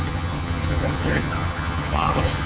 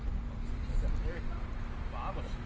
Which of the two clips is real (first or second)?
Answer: second